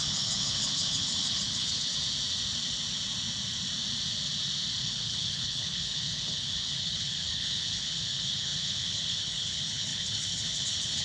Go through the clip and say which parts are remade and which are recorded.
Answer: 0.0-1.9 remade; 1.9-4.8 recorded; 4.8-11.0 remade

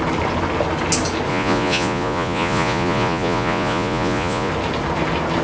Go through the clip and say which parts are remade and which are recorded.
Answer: 0.0-1.3 recorded; 1.3-4.5 remade; 4.5-5.4 recorded

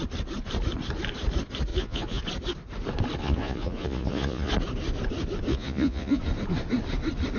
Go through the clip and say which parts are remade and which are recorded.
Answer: 0.0-1.7 recorded; 1.7-2.2 remade; 2.2-3.2 recorded; 3.2-4.5 remade; 4.5-5.5 recorded; 5.5-6.2 remade; 6.2-7.4 recorded

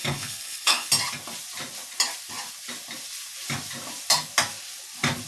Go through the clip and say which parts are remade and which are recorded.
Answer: 0.0-0.9 remade; 0.9-5.3 recorded

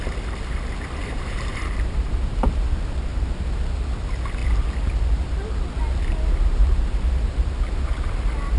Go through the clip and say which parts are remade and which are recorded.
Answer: 0.0-1.0 recorded; 1.0-2.5 remade; 2.5-3.1 recorded; 3.1-3.6 remade; 3.6-8.6 recorded

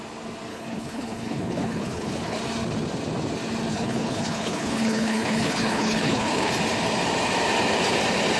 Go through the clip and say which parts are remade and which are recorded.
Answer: 0.0-0.5 recorded; 0.5-2.4 remade; 2.4-3.7 recorded; 3.7-6.5 remade; 6.5-8.4 recorded